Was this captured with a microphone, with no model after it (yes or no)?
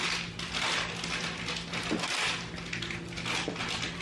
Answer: yes